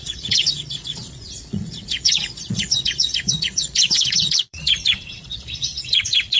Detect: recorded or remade remade